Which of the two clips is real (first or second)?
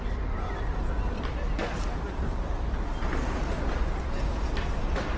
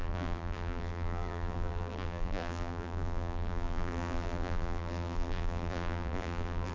first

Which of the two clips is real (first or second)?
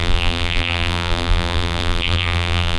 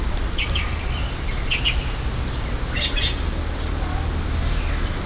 second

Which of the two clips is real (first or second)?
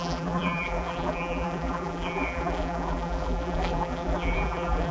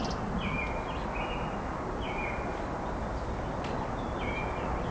second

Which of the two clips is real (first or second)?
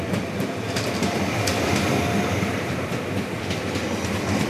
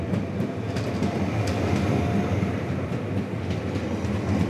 second